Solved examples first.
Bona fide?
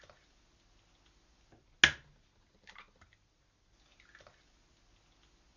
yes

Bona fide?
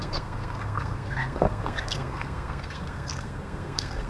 no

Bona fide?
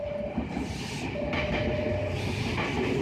yes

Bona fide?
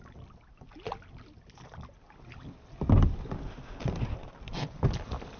yes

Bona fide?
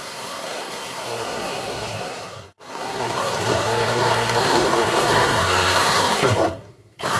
no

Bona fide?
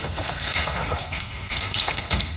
no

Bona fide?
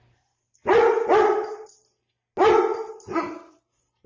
yes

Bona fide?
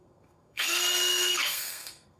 no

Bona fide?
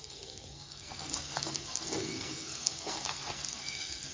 no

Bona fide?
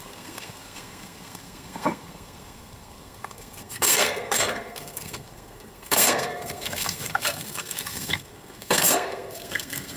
no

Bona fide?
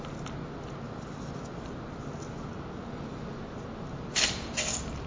yes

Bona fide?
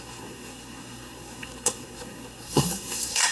no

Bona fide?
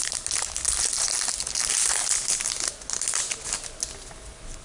yes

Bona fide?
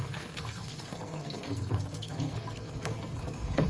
no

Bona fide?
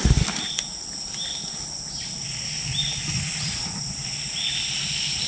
yes